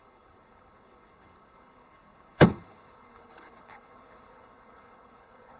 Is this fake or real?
fake